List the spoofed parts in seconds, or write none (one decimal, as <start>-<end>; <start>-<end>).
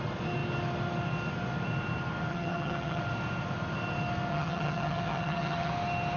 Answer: 2.3-3.0; 4.3-5.7